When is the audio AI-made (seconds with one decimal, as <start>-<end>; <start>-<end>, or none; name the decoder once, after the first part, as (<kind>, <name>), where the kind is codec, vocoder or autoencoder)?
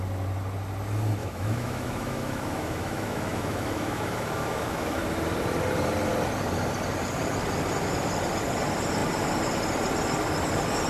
1.2-5.0 (autoencoder, DAC-VAE)